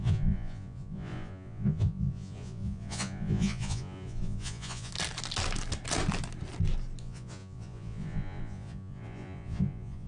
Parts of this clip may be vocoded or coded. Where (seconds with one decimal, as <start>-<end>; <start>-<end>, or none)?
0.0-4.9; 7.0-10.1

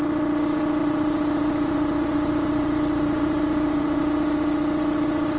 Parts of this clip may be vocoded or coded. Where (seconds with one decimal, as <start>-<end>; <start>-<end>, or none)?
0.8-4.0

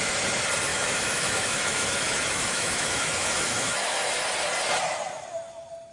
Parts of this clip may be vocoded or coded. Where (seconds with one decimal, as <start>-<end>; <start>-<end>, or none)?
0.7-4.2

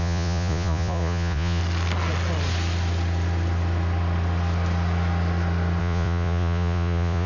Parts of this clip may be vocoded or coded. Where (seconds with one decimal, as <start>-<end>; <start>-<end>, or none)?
0.0-1.6; 5.8-7.3